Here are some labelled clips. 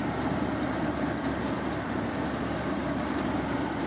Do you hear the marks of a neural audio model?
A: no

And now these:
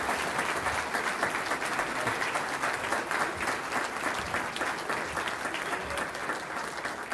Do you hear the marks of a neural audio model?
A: no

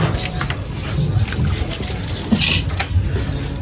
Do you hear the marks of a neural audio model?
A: no